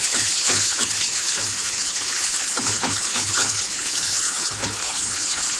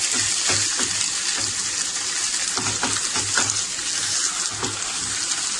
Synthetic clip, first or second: first